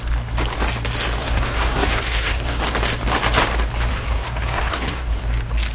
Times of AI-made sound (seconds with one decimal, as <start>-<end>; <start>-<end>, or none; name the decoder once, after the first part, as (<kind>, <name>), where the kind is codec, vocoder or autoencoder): 1.2-2.6 (codec, SNAC); 3.9-5.2